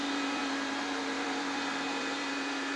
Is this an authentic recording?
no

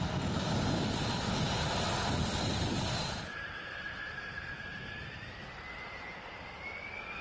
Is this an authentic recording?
yes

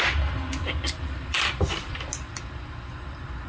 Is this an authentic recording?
yes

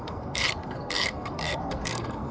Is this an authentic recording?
no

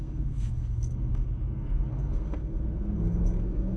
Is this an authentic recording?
no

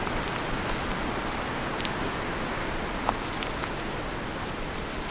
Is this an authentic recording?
yes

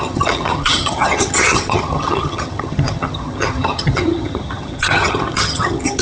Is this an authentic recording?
no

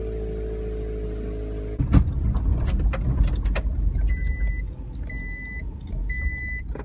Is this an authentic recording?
yes